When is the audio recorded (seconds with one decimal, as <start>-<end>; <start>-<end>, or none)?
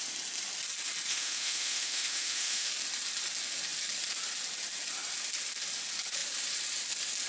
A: 0.0-1.1; 2.7-7.3